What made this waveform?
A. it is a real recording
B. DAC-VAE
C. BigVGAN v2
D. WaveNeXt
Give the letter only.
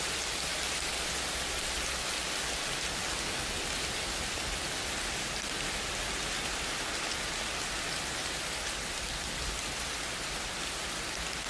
A